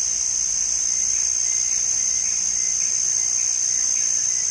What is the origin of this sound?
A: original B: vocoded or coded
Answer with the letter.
A